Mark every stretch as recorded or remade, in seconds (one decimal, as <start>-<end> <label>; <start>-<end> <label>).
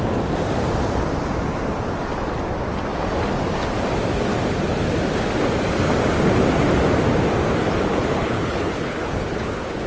0.0-7.9 recorded; 7.9-9.9 remade